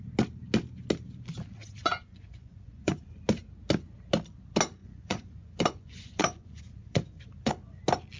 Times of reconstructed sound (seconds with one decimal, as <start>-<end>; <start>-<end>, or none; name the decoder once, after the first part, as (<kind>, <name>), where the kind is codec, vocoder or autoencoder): 1.8-3.2 (vocoder, Vocos); 4.8-7.5